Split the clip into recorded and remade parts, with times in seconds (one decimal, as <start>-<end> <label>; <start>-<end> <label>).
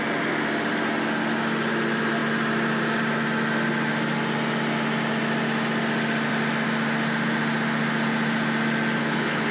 0.0-9.0 recorded; 9.0-9.5 remade